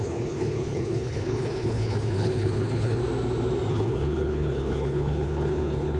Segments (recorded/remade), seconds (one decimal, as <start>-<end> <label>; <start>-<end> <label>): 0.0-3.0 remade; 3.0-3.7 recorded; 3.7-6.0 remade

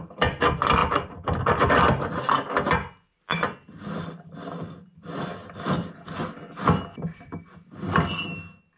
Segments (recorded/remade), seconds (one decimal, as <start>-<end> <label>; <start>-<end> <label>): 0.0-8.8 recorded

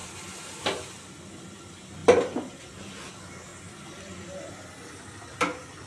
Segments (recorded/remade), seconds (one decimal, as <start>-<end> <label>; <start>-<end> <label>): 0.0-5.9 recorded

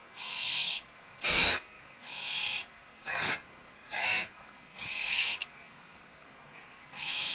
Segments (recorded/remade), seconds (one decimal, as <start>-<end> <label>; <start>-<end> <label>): 0.0-7.3 remade

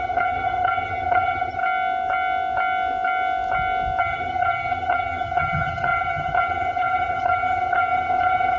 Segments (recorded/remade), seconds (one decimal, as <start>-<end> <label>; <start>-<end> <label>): 0.0-1.6 remade; 1.6-4.0 recorded; 4.0-8.6 remade

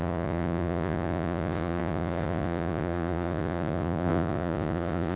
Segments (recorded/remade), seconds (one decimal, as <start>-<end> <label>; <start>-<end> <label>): 0.0-5.2 remade